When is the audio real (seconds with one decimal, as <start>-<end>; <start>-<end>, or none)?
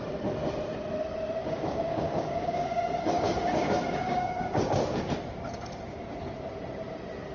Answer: 0.0-1.4; 5.1-7.3